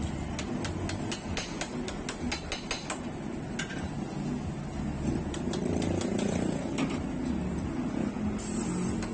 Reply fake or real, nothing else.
real